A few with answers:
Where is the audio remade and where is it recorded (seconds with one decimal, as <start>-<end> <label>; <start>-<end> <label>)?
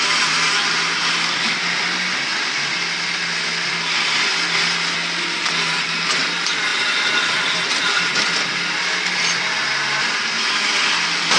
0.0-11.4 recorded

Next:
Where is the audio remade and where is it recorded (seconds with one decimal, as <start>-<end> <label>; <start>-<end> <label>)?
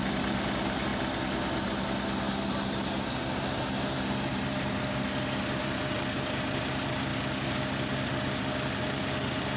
0.0-9.6 recorded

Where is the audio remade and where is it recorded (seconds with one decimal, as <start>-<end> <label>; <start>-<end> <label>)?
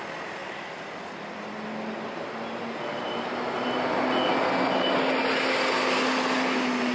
0.0-6.9 recorded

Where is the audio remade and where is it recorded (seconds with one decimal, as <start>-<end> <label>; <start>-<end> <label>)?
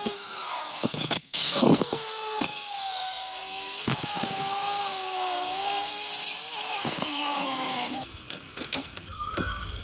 0.0-6.1 remade; 6.1-6.7 recorded; 6.7-9.8 remade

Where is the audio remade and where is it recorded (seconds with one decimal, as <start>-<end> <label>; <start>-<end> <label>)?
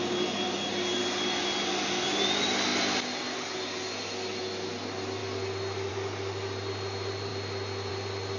0.0-8.4 recorded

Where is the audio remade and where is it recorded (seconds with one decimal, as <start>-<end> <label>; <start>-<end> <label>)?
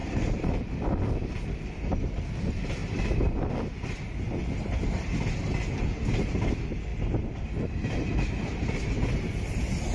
0.0-9.9 recorded